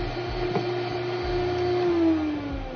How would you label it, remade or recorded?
recorded